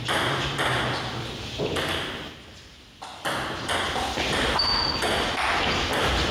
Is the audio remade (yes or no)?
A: no